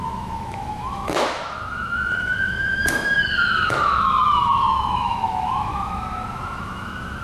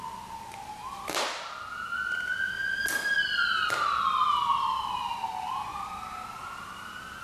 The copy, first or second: first